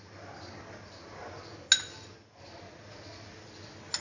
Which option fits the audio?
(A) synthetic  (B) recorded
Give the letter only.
B